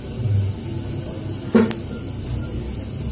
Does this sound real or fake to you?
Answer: real